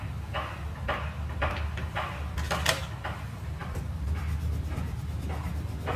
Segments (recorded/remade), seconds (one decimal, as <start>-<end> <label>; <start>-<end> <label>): 0.0-6.0 recorded